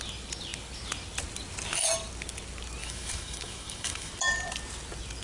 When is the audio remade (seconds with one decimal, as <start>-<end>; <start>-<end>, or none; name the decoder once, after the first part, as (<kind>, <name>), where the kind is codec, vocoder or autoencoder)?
2.8-4.1 (autoencoder, DAC-VAE)